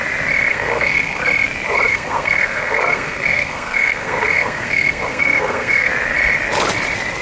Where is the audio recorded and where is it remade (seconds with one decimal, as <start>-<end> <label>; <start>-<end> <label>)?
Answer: 0.0-0.5 recorded; 0.5-1.2 remade; 1.2-1.9 recorded; 1.9-5.9 remade; 5.9-7.2 recorded

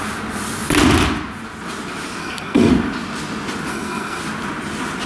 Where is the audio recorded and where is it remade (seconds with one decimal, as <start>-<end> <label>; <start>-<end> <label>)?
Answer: 0.0-2.2 recorded; 2.2-2.7 remade; 2.7-3.7 recorded; 3.7-4.2 remade; 4.2-5.1 recorded

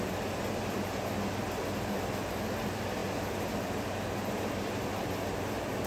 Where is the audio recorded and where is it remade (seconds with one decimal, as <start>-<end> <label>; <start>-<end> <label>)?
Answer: 0.0-5.9 recorded

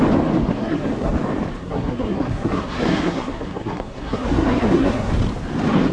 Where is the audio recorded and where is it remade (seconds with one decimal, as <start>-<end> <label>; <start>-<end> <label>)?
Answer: 0.0-0.5 recorded; 0.5-1.1 remade; 1.1-1.6 recorded; 1.6-5.1 remade; 5.1-5.9 recorded

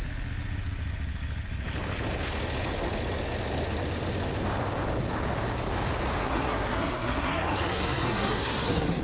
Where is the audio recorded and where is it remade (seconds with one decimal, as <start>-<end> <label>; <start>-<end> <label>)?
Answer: 0.0-6.2 recorded; 6.2-9.0 remade

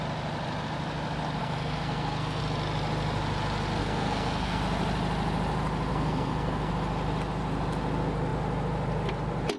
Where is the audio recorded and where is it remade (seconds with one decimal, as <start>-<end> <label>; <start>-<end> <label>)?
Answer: 0.0-1.4 recorded; 1.4-2.4 remade; 2.4-3.8 recorded; 3.8-4.6 remade; 4.6-5.9 recorded; 5.9-6.7 remade; 6.7-9.6 recorded

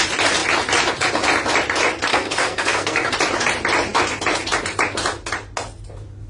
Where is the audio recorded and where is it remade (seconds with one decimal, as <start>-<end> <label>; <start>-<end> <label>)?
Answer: 0.0-2.1 recorded; 2.1-3.1 remade; 3.1-6.3 recorded

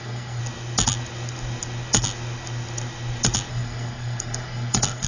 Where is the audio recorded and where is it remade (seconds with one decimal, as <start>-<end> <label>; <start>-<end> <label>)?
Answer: 0.0-0.4 remade; 0.4-3.5 recorded; 3.5-5.1 remade